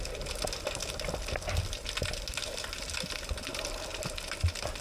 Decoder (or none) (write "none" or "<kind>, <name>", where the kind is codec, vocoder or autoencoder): none